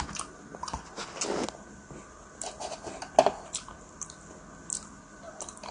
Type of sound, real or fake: real